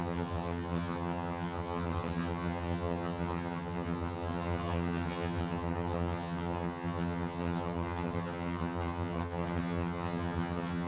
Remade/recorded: remade